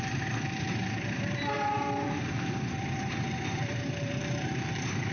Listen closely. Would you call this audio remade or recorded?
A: remade